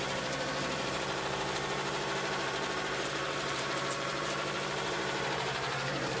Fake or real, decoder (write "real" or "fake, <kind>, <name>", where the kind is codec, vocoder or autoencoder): fake, vocoder, BigVGAN v2